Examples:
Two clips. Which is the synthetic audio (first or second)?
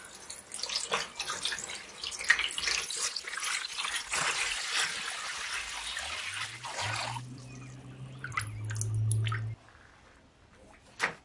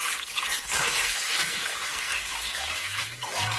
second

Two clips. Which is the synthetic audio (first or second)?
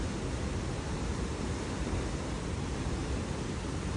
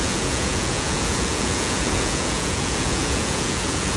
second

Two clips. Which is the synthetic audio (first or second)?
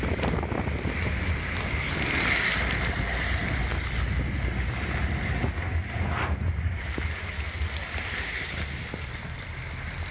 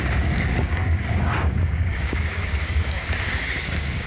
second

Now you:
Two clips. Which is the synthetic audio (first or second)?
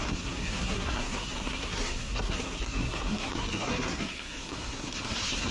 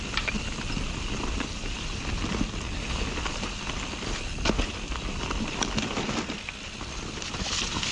first